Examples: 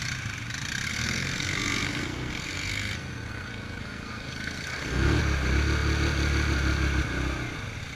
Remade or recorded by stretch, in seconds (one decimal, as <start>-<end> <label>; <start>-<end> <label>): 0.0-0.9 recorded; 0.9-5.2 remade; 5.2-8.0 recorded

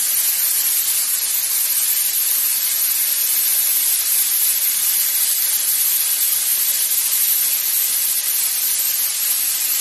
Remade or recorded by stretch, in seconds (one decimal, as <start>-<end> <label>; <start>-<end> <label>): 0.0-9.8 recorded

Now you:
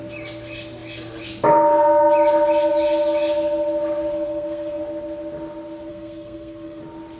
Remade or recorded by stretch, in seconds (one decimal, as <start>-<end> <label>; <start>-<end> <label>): 0.0-4.1 recorded; 4.1-4.8 remade; 4.8-5.9 recorded; 5.9-6.8 remade; 6.8-7.2 recorded

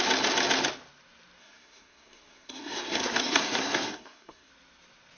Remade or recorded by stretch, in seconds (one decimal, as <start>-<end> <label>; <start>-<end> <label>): 0.0-1.4 recorded; 1.4-4.5 remade; 4.5-5.2 recorded